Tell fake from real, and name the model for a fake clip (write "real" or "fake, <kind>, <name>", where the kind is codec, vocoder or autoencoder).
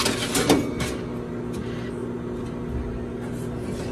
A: real